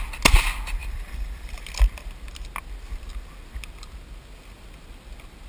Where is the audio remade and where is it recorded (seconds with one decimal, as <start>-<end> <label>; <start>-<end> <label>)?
0.0-0.8 recorded; 0.8-1.6 remade; 1.6-5.5 recorded